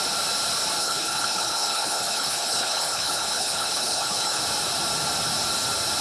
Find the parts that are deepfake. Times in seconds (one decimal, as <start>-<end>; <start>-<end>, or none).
0.8-4.4